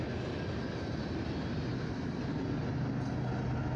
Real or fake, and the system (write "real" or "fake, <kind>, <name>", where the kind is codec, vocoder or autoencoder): real